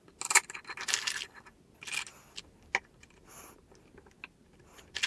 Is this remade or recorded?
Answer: recorded